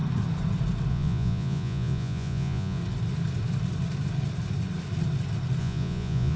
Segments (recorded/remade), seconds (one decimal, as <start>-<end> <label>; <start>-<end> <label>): 0.0-0.9 recorded; 0.9-2.8 remade; 2.8-5.6 recorded; 5.6-6.4 remade